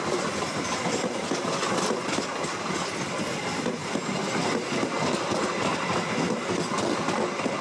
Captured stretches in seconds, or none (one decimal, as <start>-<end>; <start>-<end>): 0.0-7.6